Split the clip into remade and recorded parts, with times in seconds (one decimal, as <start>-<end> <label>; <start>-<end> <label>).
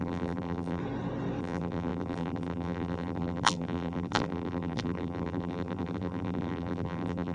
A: 0.0-0.8 remade; 0.8-1.4 recorded; 1.4-7.3 remade